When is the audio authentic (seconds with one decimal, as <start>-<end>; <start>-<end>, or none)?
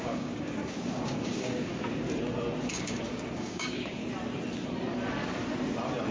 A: 1.7-2.7; 4.0-6.1